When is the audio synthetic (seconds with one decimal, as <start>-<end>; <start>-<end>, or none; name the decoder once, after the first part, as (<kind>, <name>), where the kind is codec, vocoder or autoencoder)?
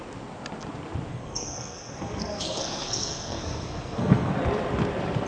1.1-4.3 (codec, SNAC)